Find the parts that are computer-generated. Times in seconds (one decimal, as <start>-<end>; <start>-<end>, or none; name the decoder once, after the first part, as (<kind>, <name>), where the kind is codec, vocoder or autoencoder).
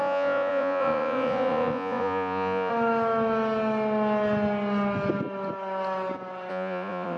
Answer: 0.0-2.7 (vocoder, Vocos); 6.5-7.2